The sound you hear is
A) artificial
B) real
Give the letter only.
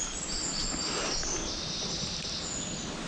B